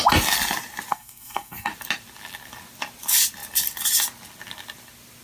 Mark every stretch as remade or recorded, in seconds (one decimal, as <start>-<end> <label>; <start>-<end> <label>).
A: 0.0-0.9 recorded; 0.9-1.7 remade; 1.7-5.2 recorded